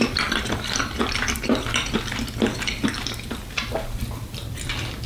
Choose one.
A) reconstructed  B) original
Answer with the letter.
A